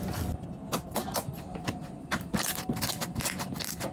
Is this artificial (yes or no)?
no